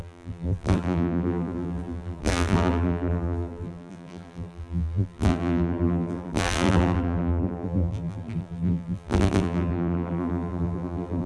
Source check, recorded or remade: remade